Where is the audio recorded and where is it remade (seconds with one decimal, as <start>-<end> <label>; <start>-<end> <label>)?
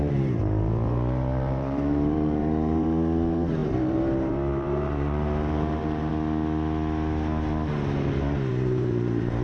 0.0-6.1 remade; 6.1-8.5 recorded; 8.5-9.4 remade